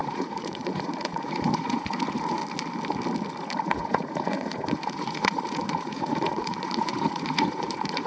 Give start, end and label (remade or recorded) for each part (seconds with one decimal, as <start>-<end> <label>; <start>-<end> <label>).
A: 0.0-2.4 remade; 2.4-3.6 recorded; 3.6-8.1 remade